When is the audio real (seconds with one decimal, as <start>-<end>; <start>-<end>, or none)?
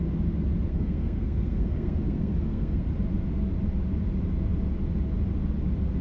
0.0-0.7; 2.9-6.0